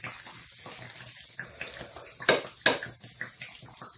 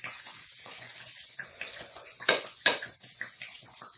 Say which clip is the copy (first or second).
second